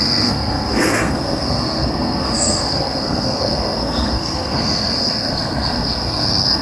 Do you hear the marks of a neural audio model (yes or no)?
yes